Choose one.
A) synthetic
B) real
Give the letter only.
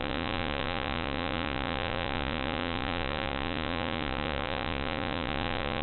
A